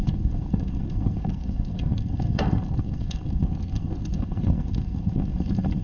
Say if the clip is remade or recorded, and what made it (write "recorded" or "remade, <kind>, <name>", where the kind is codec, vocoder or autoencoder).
remade, codec, SNAC